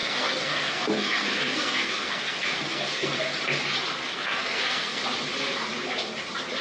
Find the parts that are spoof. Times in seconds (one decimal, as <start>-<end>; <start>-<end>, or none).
0.0-3.2; 4.0-5.0